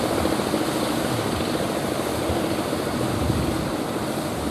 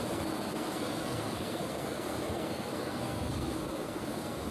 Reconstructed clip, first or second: second